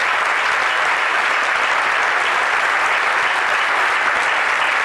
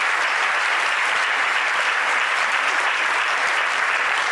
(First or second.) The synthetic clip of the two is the second